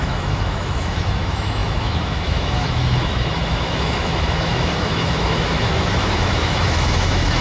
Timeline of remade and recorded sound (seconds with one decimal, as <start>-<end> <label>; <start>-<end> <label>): 0.0-7.4 remade